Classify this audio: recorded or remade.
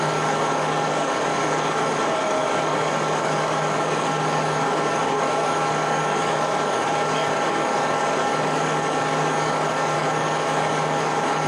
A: remade